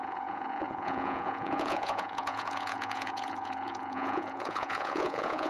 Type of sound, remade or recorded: remade